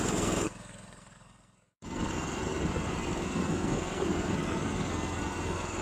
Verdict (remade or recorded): remade